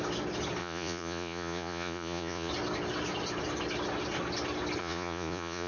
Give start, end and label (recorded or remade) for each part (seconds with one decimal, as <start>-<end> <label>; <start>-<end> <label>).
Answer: 0.0-0.6 recorded; 0.6-2.5 remade; 2.5-4.8 recorded; 4.8-5.7 remade